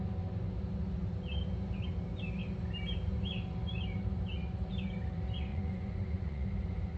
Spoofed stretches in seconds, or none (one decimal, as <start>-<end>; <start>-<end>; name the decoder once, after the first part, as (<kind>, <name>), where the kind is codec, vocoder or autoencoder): 5.5-6.5 (vocoder, Vocos)